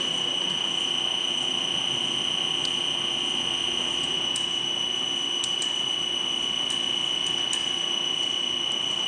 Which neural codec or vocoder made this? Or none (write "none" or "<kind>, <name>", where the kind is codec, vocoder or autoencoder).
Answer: none